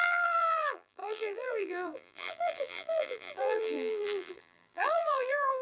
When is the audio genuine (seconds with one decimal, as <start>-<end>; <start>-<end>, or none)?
none